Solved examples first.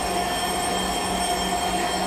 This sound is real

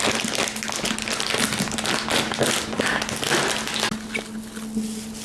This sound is real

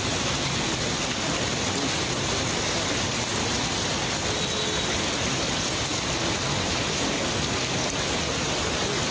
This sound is real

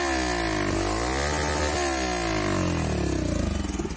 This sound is real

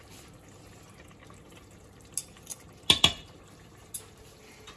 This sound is real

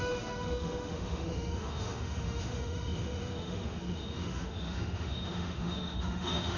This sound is fake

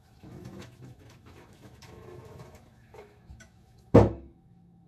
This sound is fake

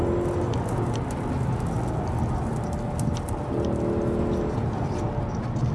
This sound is real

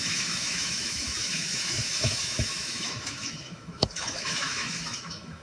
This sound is fake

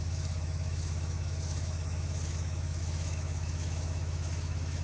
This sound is fake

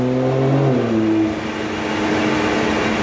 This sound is real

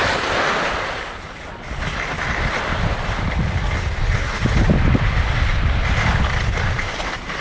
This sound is real